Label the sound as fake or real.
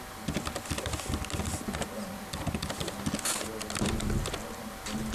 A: real